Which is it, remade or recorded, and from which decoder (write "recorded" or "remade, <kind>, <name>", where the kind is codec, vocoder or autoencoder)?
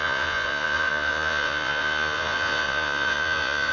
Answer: remade, vocoder, Vocos